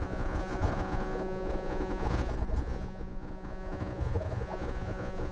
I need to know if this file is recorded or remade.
remade